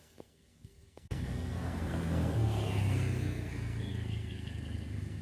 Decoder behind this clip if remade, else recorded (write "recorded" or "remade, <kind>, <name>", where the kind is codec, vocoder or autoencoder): remade, codec, SNAC